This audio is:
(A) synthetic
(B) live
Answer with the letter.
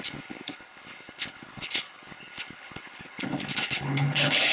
A